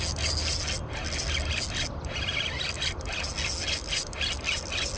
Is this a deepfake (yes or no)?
no